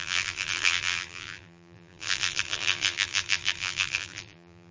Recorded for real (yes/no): no